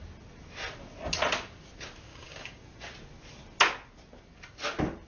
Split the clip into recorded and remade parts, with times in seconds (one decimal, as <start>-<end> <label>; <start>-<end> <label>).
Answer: 0.0-2.1 recorded; 2.1-2.6 remade; 2.6-5.1 recorded